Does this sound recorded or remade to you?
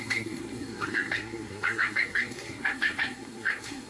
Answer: remade